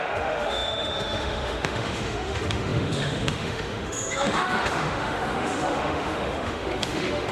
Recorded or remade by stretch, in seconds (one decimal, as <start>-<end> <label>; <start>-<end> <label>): 0.0-7.3 remade